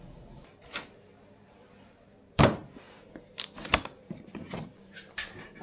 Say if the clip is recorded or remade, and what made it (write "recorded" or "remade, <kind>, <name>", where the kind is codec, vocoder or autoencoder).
remade, vocoder, BigVGAN v2